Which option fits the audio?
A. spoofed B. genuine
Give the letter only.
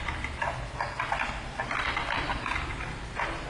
B